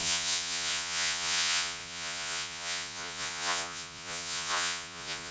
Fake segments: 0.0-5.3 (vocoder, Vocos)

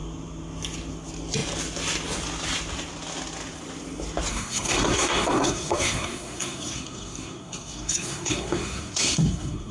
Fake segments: 4.3-9.7 (codec, SNAC)